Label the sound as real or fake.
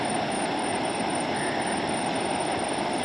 real